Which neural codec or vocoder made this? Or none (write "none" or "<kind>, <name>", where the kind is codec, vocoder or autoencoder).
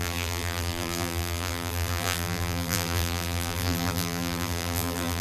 vocoder, BigVGAN v2